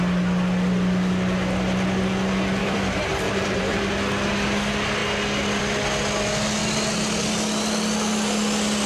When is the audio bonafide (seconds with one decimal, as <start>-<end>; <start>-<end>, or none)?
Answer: 0.0-2.6; 3.9-8.9

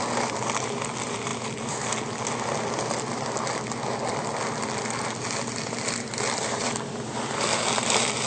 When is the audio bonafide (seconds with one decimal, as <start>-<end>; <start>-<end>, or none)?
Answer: 1.3-6.0

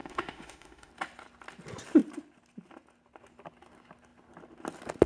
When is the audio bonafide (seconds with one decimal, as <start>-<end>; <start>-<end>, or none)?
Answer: 0.9-5.1

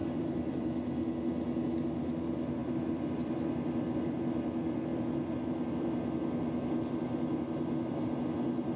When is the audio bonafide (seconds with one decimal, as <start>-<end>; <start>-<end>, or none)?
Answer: 0.7-2.6; 3.5-4.9; 5.7-8.8

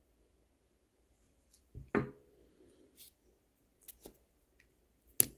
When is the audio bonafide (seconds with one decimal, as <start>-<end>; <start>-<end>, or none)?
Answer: 0.0-5.4

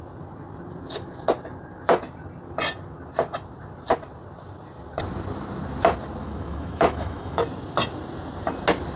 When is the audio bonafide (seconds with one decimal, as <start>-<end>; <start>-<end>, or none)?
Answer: 0.0-6.2; 7.4-9.0

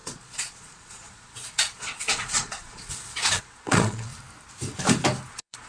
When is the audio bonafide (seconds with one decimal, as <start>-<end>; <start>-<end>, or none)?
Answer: 4.1-5.3

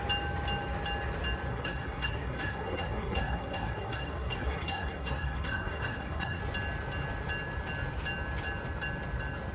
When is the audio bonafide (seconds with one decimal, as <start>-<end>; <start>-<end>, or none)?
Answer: 0.0-1.5; 6.4-9.5